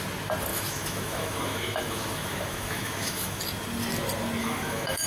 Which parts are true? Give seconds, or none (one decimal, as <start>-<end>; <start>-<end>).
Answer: 0.0-0.5; 3.4-4.4